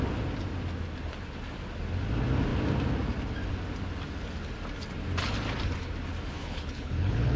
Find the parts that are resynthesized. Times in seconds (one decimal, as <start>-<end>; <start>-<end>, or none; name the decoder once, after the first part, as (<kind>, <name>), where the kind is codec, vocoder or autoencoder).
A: 6.4-7.4 (codec, HILCodec)